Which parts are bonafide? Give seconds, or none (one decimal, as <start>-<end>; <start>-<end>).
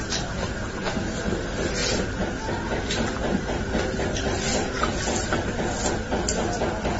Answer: 0.0-7.0